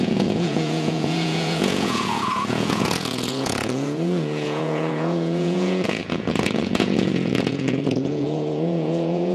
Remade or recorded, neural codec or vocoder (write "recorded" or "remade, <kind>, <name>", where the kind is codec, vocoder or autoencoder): remade, vocoder, Vocos